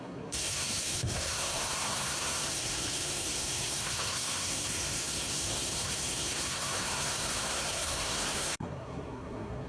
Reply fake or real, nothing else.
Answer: fake